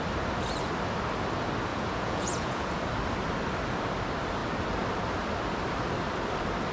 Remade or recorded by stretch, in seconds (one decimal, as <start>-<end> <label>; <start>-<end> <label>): 0.0-1.7 recorded; 1.7-2.8 remade; 2.8-6.7 recorded

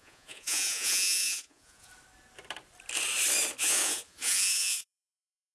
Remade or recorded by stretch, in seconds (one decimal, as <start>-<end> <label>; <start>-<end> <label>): 0.0-1.9 remade; 1.9-3.6 recorded; 3.6-5.5 remade

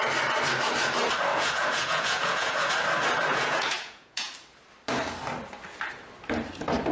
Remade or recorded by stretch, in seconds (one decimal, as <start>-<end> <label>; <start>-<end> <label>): 0.0-1.3 recorded; 1.3-2.7 remade; 2.7-3.3 recorded; 3.3-4.3 remade; 4.3-6.9 recorded

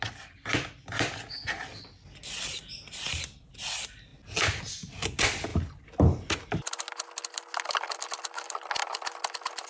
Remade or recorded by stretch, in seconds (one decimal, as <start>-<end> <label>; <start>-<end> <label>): 0.0-9.7 recorded

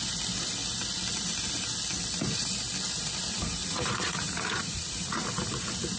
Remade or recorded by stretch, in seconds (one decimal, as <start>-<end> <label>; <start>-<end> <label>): 0.0-3.6 recorded; 3.6-5.2 remade; 5.2-6.0 recorded

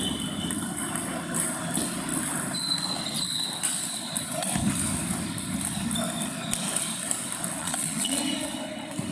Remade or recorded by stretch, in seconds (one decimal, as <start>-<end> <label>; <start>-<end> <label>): 0.0-7.6 recorded; 7.6-8.2 remade; 8.2-9.1 recorded